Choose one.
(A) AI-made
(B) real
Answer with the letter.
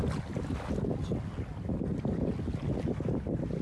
B